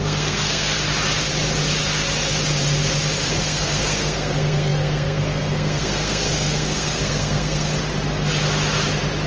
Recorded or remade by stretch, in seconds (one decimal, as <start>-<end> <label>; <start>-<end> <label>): 0.0-0.8 remade; 0.8-3.3 recorded; 3.3-7.7 remade; 7.7-9.3 recorded